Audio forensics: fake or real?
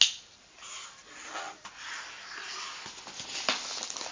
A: real